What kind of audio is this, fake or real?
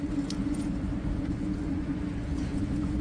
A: fake